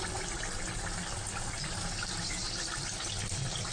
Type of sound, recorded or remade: recorded